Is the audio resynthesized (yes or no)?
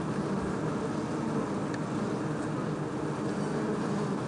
no